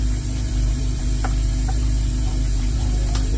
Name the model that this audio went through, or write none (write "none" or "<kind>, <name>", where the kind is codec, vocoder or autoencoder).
vocoder, BigVGAN v2